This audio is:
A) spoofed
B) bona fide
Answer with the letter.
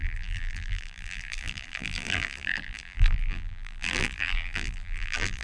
A